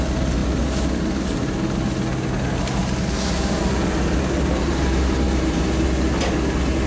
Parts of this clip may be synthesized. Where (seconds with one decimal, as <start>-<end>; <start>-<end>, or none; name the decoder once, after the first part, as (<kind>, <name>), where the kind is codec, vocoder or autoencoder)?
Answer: none